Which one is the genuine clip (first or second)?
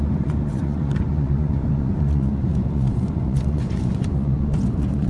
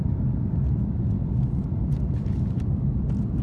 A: second